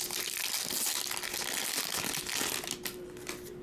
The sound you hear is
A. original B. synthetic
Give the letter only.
A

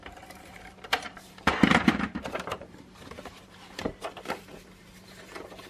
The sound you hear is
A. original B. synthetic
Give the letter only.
B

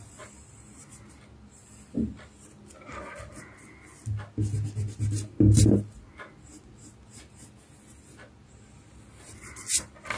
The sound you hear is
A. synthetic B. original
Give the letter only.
B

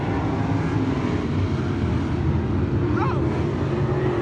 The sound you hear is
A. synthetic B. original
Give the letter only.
B